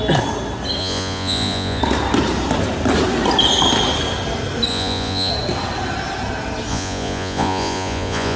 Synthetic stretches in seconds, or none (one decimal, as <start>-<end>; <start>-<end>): 0.8-1.8; 4.7-5.3; 6.7-8.4